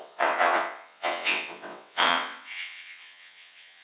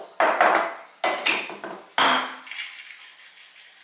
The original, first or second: second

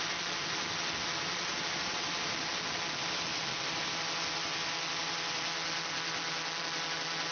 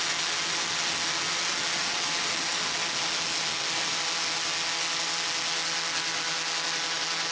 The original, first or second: second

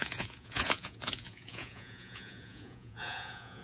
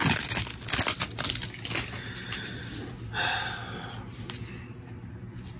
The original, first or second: second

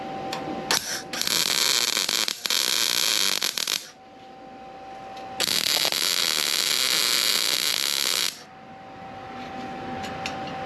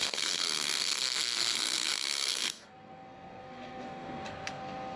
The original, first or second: first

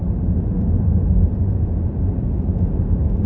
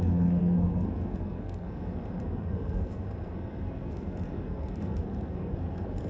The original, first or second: first